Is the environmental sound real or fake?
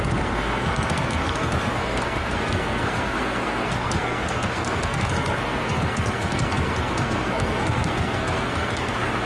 fake